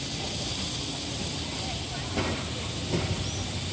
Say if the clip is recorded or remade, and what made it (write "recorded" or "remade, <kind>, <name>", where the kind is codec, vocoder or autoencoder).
recorded